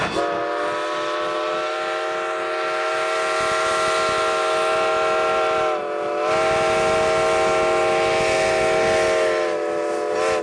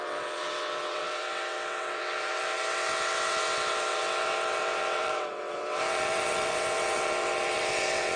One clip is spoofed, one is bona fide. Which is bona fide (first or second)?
first